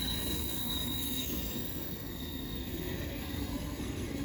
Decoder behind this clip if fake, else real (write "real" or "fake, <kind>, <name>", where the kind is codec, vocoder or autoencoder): fake, codec, SNAC